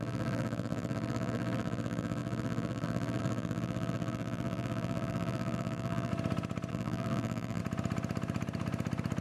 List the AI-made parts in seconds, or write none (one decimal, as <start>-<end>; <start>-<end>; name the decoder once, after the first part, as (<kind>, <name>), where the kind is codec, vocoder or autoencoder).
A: 0.0-6.1 (vocoder, BigVGAN v2); 6.7-7.6